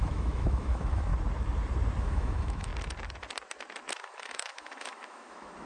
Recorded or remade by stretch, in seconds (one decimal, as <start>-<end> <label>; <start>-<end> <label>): 0.0-1.1 remade; 1.1-2.0 recorded; 2.0-2.7 remade; 2.7-4.0 recorded; 4.0-5.7 remade